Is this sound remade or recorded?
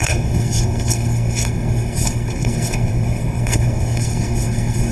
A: remade